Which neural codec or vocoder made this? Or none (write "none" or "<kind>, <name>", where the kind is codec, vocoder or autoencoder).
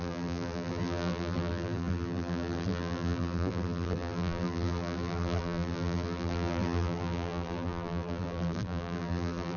vocoder, BigVGAN v2